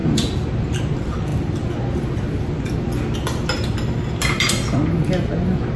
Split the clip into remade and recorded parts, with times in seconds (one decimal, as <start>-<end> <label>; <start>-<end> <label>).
0.0-5.8 recorded